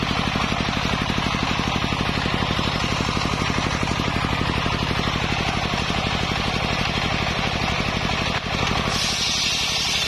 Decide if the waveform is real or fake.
real